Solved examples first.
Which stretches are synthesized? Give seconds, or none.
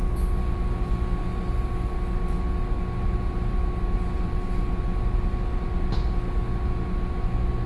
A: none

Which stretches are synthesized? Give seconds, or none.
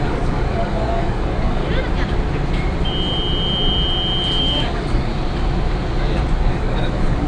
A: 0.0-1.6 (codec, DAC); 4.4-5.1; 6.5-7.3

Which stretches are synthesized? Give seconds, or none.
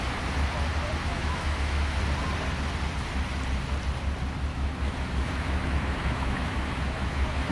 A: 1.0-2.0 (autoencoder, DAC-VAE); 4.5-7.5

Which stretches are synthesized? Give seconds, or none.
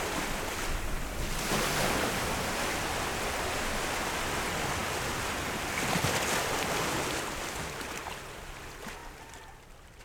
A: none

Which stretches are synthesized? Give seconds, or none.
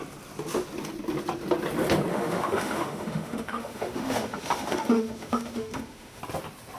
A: 2.1-6.2 (autoencoder, DAC-VAE)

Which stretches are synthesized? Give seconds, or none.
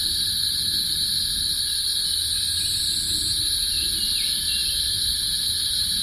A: none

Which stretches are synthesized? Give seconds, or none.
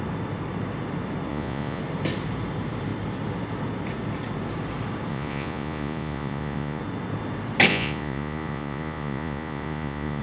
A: 1.3-1.8 (vocoder, Vocos); 5.1-6.8; 7.7-10.2